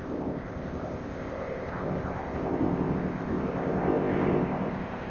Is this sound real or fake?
fake